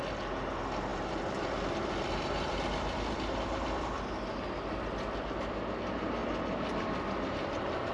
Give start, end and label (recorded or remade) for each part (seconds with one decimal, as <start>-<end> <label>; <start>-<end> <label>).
0.0-0.9 recorded; 0.9-5.4 remade; 5.4-6.2 recorded; 6.2-6.9 remade; 6.9-7.9 recorded